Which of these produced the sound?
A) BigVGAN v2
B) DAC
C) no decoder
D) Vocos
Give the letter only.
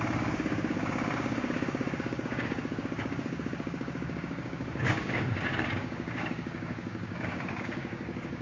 B